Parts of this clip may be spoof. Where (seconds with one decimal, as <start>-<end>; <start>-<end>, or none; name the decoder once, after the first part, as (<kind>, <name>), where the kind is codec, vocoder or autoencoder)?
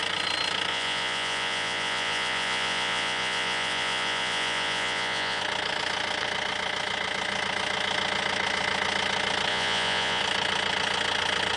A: 0.7-5.4 (vocoder, Vocos); 9.5-10.2